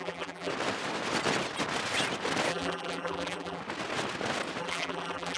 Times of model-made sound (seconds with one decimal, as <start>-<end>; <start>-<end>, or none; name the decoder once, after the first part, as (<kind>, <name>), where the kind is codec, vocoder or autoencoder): 0.0-0.5 (vocoder, BigVGAN v2); 2.5-3.6; 4.6-5.4